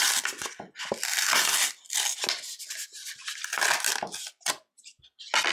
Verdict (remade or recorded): recorded